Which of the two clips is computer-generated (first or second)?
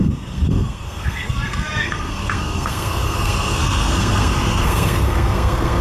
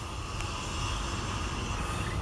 first